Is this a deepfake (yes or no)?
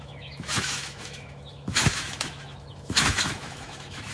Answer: yes